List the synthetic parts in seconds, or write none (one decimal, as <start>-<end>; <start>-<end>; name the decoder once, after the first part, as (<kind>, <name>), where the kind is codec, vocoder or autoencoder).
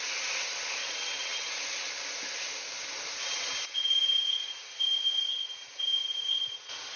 0.8-1.5 (vocoder, WaveNeXt); 3.2-7.0